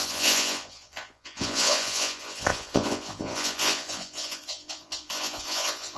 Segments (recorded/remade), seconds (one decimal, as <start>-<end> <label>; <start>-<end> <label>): 0.0-6.0 remade